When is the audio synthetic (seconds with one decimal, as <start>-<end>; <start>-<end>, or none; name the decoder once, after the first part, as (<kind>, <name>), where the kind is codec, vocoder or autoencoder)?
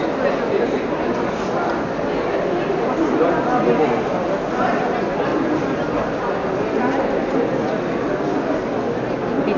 none